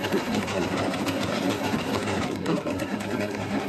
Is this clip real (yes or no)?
no